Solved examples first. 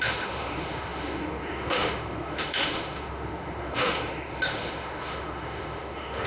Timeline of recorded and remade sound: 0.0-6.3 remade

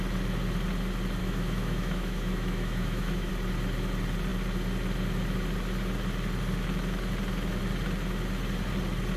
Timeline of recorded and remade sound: 0.0-1.2 recorded; 1.2-3.3 remade; 3.3-9.2 recorded

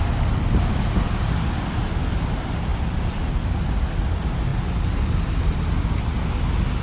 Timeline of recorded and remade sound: 0.0-6.8 recorded

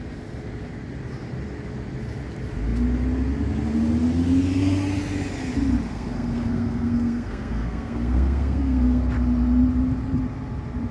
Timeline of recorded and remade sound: 0.0-5.9 recorded; 5.9-9.0 remade; 9.0-10.9 recorded

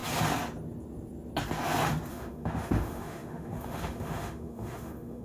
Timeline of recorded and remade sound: 0.0-2.1 recorded; 2.1-5.2 remade

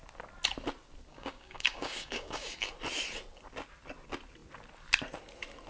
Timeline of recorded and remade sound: 0.0-1.1 recorded; 1.1-2.7 remade; 2.7-5.7 recorded

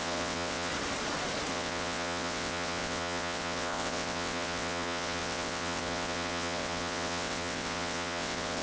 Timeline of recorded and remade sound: 0.0-0.7 remade; 0.7-1.5 recorded; 1.5-8.6 remade